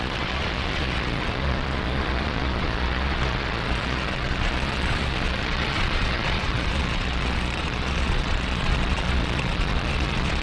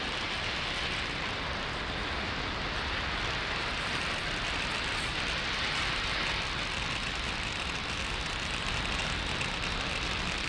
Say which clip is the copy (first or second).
first